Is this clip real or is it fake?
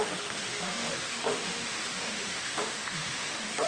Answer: fake